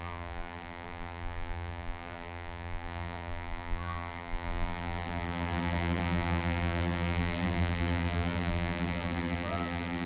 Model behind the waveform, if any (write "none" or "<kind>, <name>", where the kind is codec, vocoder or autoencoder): vocoder, BigVGAN v2